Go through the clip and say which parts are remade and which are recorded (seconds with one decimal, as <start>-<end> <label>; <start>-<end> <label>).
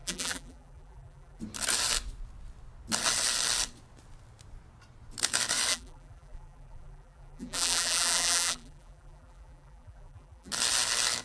0.0-1.4 remade; 1.4-5.7 recorded; 5.7-10.5 remade; 10.5-11.2 recorded